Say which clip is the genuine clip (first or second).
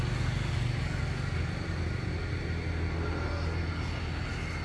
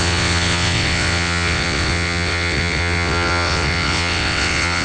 first